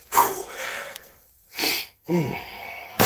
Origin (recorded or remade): remade